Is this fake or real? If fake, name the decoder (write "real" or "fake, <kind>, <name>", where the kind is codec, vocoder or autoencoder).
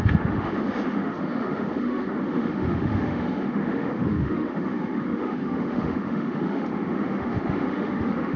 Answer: fake, autoencoder, DAC-VAE